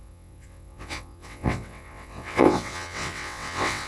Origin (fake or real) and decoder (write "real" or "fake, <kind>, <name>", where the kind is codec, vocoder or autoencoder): fake, vocoder, WaveNeXt